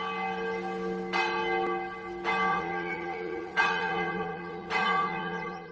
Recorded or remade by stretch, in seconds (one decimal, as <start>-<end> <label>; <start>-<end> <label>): 0.0-2.5 recorded; 2.5-5.7 remade